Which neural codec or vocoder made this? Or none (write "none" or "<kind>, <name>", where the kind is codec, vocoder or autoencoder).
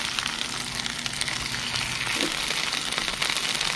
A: none